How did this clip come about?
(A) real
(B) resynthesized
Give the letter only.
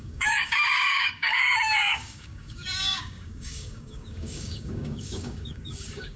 B